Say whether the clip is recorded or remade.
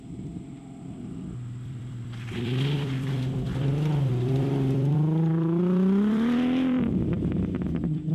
remade